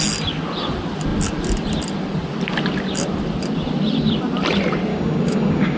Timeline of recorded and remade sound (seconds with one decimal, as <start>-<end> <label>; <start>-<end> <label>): 0.0-4.9 recorded; 4.9-5.8 remade